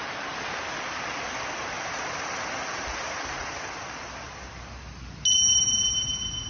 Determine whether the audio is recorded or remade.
recorded